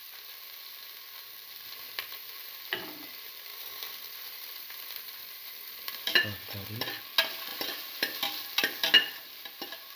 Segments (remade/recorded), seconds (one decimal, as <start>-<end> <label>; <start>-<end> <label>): 0.0-3.5 recorded; 3.5-7.0 remade; 7.0-10.0 recorded